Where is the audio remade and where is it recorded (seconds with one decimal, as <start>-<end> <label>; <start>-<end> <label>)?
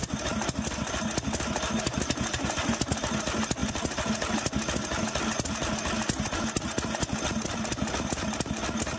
0.0-9.0 recorded